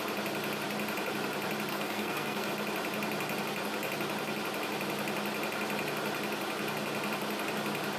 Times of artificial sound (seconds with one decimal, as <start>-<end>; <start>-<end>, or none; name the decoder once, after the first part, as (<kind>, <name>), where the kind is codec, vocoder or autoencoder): 1.7-2.5 (codec, SNAC)